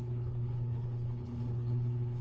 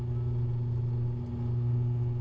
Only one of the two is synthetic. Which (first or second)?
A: first